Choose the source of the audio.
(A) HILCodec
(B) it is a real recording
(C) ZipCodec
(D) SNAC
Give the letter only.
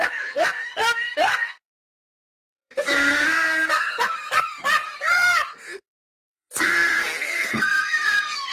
D